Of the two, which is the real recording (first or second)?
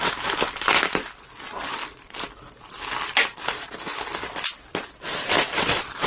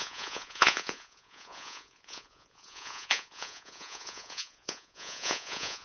first